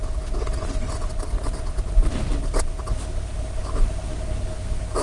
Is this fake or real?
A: real